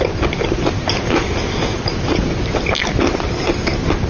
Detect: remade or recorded recorded